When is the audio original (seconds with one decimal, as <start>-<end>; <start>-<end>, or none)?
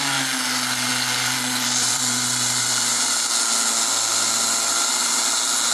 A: 0.0-0.9; 3.3-4.1; 5.2-5.7